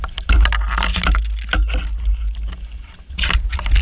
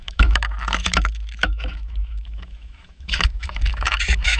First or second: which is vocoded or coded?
second